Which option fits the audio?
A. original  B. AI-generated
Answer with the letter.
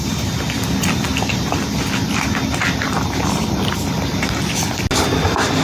A